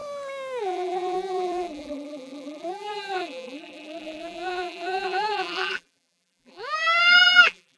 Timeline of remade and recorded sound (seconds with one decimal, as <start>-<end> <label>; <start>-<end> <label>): 0.0-0.6 recorded; 0.6-7.8 remade